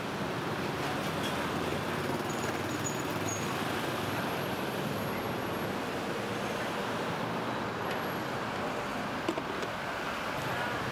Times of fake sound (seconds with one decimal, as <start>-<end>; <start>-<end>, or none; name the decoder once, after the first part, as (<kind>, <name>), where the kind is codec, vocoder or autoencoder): 3.1-5.2 (vocoder, BigVGAN v2)